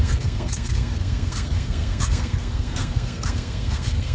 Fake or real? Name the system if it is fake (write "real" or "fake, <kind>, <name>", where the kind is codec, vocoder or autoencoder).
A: fake, codec, SNAC